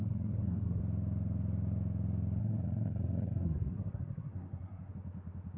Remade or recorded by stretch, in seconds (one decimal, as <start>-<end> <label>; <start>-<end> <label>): 0.0-0.8 remade; 0.8-2.4 recorded; 2.4-4.9 remade; 4.9-5.6 recorded